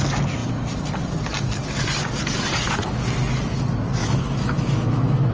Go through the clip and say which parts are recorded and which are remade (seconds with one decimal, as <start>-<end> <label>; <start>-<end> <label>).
0.0-4.0 recorded; 4.0-5.3 remade